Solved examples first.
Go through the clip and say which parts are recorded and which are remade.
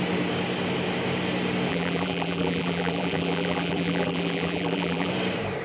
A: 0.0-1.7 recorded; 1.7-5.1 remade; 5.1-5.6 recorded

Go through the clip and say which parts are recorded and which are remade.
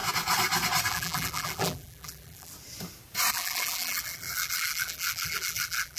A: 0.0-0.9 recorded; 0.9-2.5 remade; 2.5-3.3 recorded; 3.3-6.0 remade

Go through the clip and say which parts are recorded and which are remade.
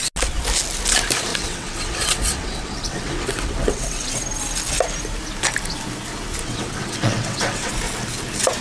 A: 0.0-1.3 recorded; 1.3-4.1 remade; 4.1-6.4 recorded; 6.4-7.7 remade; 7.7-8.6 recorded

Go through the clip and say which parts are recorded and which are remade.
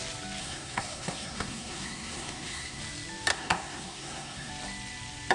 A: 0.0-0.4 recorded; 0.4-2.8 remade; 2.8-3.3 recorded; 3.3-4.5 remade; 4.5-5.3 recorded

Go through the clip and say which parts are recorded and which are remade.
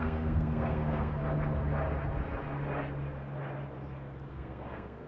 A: 0.0-1.2 remade; 1.2-4.3 recorded; 4.3-5.1 remade